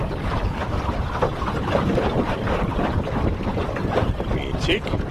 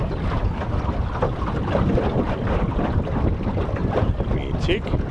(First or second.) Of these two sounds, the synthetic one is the first